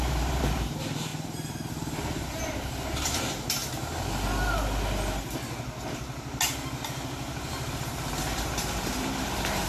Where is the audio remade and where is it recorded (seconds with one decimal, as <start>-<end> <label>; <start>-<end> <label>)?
0.0-1.1 remade; 1.1-1.7 recorded; 1.7-3.6 remade; 3.6-7.7 recorded; 7.7-9.7 remade